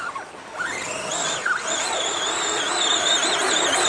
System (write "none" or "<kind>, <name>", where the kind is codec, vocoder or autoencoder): none